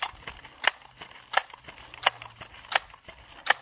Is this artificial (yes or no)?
no